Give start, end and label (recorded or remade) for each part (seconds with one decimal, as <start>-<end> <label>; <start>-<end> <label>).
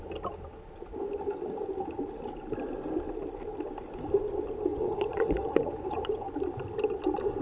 0.0-4.7 recorded; 4.7-6.3 remade; 6.3-7.4 recorded